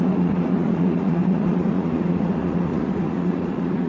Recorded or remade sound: remade